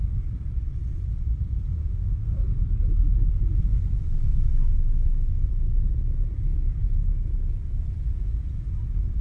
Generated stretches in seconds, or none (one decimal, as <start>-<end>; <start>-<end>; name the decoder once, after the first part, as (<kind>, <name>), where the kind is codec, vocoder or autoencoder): 1.8-2.3 (autoencoder, DAC-VAE)

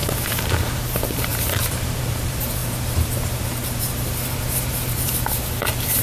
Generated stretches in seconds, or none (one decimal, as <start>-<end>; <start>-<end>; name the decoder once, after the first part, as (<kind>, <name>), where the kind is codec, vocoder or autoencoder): 0.0-6.0 (vocoder, BigVGAN v2)

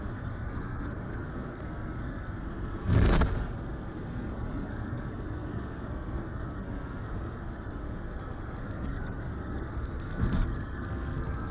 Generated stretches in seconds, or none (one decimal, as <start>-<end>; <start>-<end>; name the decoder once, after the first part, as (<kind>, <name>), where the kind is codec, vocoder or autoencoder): 0.0-11.5 (codec, SNAC)

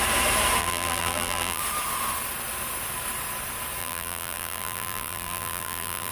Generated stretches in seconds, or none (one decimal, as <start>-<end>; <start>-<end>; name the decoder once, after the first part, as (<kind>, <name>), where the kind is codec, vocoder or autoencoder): 0.6-1.6 (vocoder, BigVGAN v2); 3.8-6.1

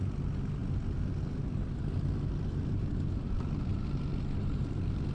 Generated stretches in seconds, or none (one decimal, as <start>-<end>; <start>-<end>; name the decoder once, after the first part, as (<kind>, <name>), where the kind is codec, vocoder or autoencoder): none

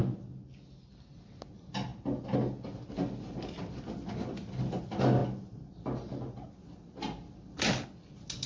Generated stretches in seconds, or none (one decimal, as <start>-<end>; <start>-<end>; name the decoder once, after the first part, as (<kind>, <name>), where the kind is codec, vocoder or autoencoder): none

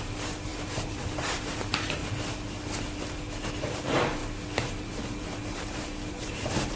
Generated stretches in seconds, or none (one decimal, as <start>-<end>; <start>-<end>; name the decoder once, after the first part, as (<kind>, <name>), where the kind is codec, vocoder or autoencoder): 0.0-2.0 (vocoder, BigVGAN v2); 3.6-4.2; 4.8-6.8

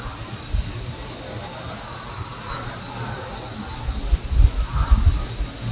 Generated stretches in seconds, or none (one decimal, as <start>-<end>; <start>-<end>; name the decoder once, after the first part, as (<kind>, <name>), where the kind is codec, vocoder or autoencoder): none